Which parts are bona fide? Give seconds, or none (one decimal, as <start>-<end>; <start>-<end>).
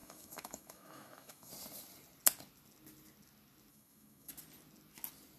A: 1.5-3.7; 4.3-5.4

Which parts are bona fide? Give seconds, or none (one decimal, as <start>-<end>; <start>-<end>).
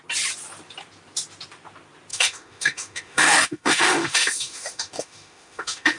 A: 0.0-2.1